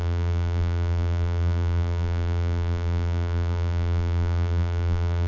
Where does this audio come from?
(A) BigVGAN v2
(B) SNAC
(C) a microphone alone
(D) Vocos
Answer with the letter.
A